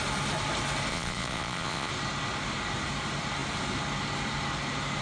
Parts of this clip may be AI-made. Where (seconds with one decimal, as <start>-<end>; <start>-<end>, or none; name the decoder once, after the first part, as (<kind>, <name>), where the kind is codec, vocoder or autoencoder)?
0.9-1.9 (vocoder, Vocos)